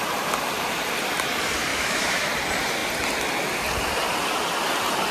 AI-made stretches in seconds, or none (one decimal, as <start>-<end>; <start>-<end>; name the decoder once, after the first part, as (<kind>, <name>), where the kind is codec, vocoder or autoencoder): 1.7-2.3 (autoencoder, DAC-VAE)